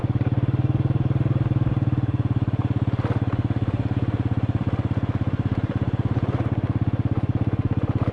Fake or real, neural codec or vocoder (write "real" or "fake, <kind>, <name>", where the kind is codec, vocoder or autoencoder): fake, vocoder, BigVGAN v2